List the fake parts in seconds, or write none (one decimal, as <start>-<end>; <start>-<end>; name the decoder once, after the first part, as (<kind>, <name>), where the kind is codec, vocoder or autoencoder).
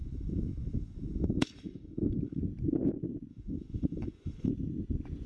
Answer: 0.0-2.4 (autoencoder, DAC-VAE); 3.3-4.5